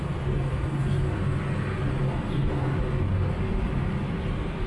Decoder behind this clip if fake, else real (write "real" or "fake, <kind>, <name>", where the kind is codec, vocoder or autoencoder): real